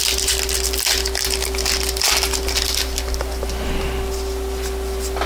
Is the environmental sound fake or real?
real